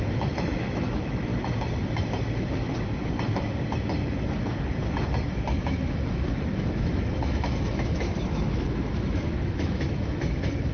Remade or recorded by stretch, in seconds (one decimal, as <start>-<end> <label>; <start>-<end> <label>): 0.0-1.3 remade; 1.3-5.6 recorded; 5.6-10.7 remade